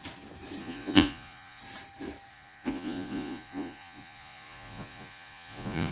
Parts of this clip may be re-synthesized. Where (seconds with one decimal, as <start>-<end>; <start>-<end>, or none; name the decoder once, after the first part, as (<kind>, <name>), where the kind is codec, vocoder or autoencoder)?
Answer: 0.6-1.6 (vocoder, Vocos); 2.3-5.9